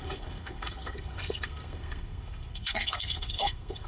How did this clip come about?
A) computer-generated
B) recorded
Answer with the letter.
A